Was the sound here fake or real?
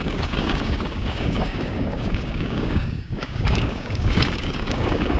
fake